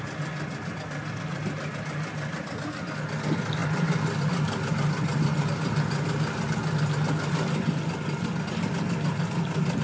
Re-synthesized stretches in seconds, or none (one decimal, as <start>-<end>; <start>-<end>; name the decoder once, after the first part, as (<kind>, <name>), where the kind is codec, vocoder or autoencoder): none

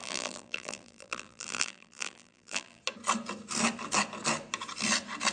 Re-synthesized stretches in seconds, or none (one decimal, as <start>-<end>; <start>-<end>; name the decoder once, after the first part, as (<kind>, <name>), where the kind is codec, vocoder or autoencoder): 0.0-2.8 (vocoder, BigVGAN v2)